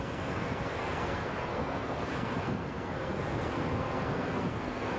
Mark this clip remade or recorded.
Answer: remade